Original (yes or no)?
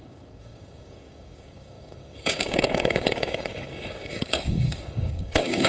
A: no